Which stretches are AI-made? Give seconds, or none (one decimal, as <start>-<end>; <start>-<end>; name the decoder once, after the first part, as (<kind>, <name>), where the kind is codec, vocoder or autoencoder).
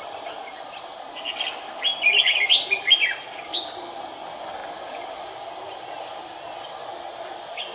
none